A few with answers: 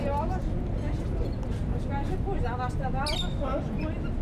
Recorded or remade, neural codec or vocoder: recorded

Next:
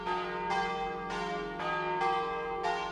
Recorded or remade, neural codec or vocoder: recorded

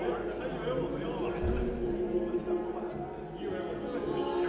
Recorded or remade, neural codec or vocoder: recorded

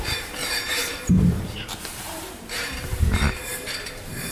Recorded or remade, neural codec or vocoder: remade, vocoder, BigVGAN v2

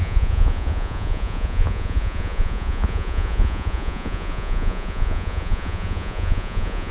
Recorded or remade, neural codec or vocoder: remade, vocoder, Vocos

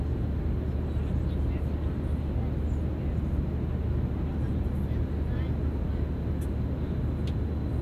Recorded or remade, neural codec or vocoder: recorded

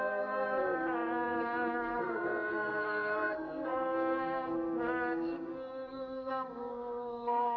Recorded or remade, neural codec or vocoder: remade, codec, SNAC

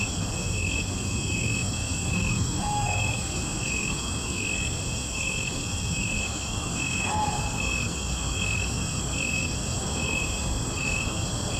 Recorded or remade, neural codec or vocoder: remade, codec, SNAC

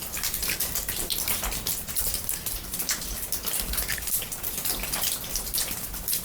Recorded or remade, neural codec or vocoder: recorded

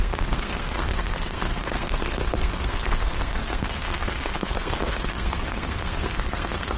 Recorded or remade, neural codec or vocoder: remade, codec, SNAC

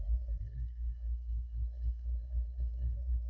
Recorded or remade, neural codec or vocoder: remade, codec, SNAC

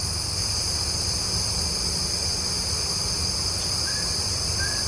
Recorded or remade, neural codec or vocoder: recorded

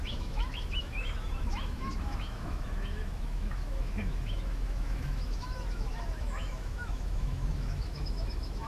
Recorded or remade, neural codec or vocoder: remade, autoencoder, DAC-VAE